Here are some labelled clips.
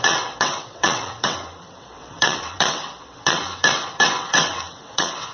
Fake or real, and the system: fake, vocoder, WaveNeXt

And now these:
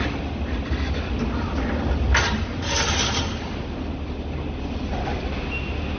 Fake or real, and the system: real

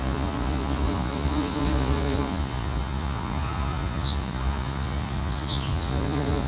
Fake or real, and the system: fake, vocoder, Vocos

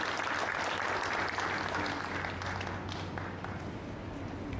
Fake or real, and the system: real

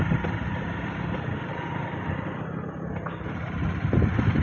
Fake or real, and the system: real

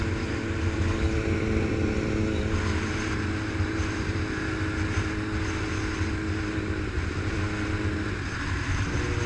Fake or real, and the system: real